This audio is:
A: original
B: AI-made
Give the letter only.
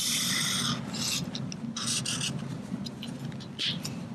A